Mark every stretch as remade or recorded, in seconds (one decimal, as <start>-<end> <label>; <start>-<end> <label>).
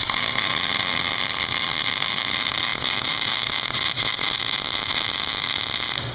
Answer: 0.0-6.1 recorded